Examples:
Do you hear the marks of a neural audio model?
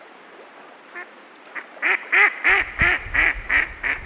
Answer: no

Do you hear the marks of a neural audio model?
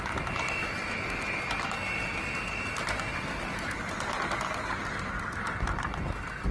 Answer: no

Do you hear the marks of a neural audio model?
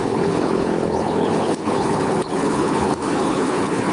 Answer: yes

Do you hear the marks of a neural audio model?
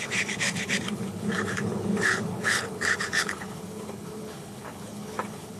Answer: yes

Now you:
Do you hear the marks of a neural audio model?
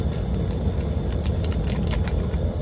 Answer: no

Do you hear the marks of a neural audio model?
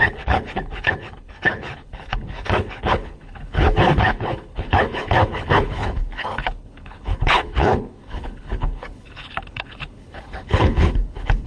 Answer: yes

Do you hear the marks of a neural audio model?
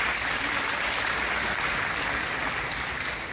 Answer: no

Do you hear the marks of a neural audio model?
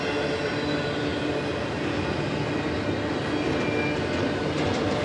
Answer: no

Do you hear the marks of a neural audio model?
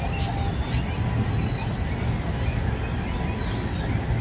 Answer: no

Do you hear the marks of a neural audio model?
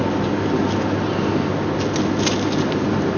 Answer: no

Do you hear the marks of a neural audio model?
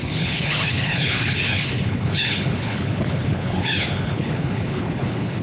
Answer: yes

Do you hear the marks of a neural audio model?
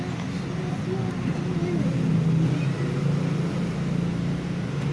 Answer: no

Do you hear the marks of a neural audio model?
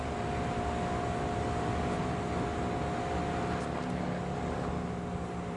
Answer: no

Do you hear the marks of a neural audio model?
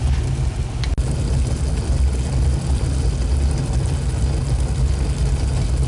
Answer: no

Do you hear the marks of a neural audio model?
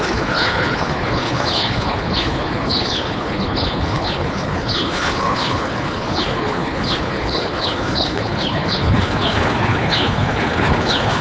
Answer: yes